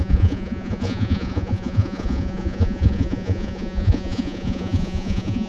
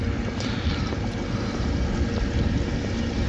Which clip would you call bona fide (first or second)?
second